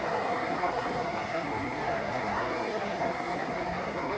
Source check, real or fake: fake